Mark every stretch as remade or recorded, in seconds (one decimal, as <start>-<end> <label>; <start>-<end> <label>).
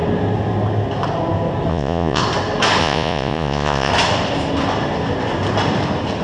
0.0-1.7 recorded; 1.7-2.2 remade; 2.2-2.8 recorded; 2.8-3.9 remade; 3.9-6.2 recorded